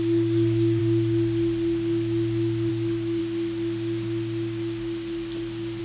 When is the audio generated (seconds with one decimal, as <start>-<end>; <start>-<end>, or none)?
0.0-0.8; 2.7-3.2